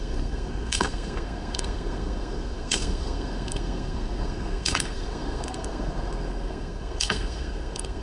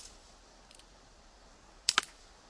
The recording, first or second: second